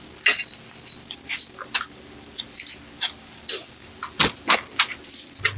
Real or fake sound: real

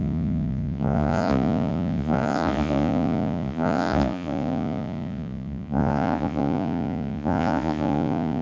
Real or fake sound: fake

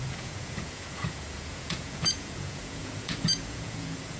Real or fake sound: fake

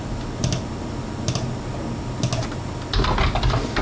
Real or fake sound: real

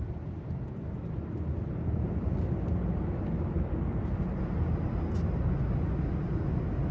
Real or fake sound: real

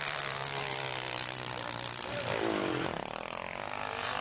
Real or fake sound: real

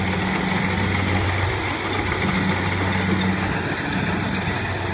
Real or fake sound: real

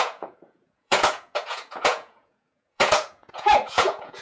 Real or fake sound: fake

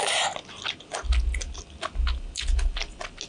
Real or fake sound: real